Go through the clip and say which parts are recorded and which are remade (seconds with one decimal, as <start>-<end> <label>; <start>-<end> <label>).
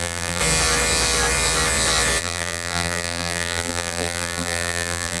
0.0-0.4 remade; 0.4-2.2 recorded; 2.2-5.2 remade